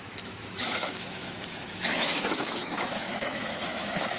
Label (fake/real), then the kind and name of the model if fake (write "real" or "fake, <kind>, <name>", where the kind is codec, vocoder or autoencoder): fake, autoencoder, DAC-VAE